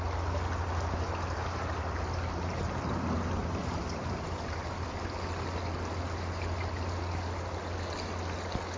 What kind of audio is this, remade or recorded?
recorded